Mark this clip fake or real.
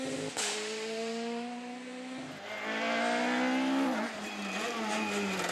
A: real